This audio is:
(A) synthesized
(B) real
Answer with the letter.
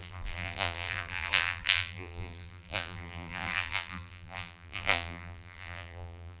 A